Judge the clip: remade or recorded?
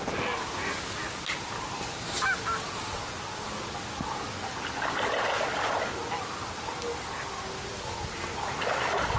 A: recorded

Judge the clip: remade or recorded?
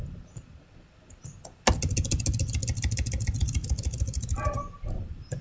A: recorded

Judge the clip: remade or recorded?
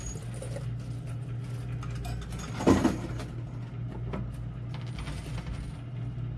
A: recorded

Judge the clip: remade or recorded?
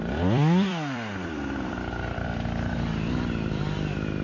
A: remade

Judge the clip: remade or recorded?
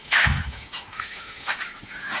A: remade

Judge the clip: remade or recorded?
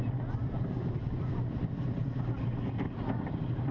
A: remade